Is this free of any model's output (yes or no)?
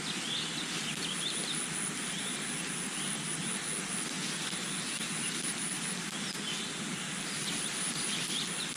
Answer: yes